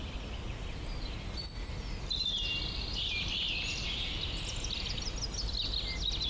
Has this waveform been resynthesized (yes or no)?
no